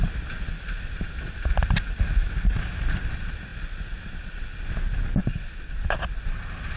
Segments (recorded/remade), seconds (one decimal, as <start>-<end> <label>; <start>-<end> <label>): 0.0-6.8 recorded